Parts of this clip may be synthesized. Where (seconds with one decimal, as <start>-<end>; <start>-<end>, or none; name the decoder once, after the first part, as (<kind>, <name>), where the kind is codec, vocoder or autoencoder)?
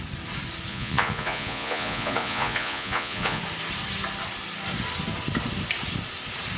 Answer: 0.7-3.4 (vocoder, Vocos)